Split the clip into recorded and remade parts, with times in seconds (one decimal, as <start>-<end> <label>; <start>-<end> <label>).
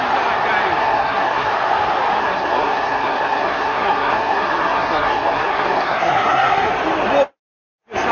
0.0-0.8 recorded; 0.8-1.5 remade; 1.5-2.2 recorded; 2.2-6.7 remade; 6.7-8.1 recorded